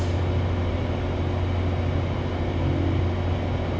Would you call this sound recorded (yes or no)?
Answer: yes